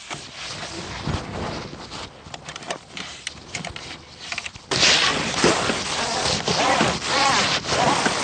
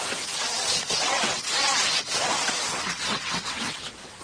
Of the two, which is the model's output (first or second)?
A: second